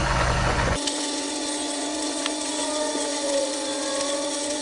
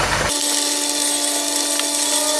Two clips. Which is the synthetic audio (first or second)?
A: first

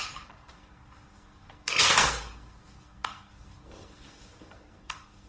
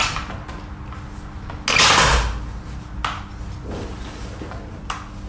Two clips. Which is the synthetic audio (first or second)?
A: first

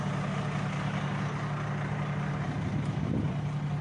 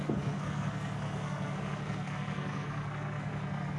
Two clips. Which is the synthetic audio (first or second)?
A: second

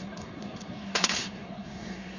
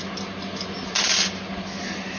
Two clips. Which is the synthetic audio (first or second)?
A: first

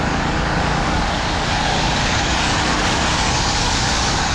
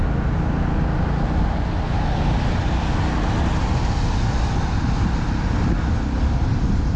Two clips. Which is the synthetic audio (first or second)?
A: first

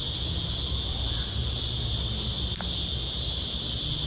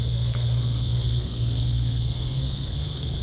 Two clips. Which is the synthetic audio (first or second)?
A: second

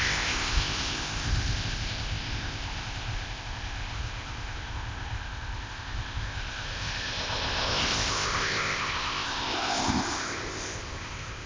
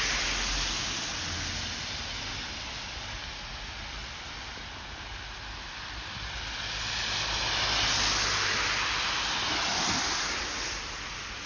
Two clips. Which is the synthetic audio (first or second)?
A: first